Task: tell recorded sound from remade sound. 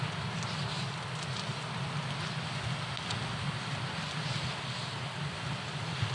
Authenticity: recorded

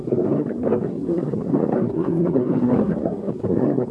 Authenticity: remade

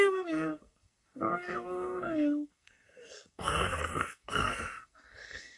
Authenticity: remade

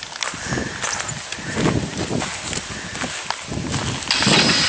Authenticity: recorded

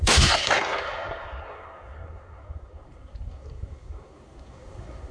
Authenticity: remade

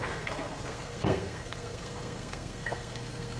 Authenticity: remade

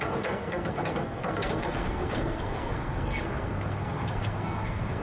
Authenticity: remade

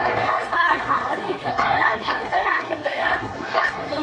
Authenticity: remade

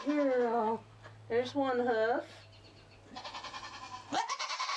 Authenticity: recorded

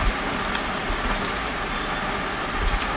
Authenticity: recorded